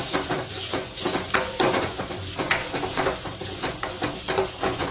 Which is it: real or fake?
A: fake